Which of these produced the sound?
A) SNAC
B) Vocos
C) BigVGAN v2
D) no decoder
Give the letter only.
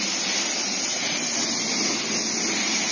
D